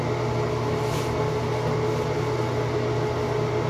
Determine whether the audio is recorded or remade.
recorded